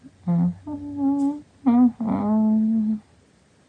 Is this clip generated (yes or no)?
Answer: no